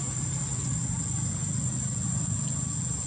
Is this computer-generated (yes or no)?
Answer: no